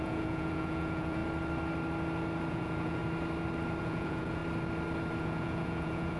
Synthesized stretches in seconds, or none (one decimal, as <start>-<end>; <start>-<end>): 0.0-1.2; 2.5-3.0; 3.8-4.4; 5.2-6.2

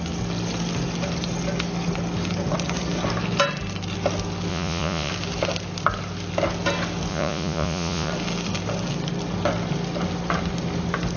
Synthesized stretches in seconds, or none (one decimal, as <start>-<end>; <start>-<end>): 4.5-5.1; 7.1-8.1